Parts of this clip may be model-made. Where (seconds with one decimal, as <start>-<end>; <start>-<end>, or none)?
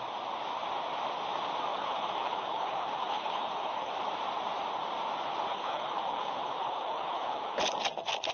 1.7-3.9; 5.5-7.6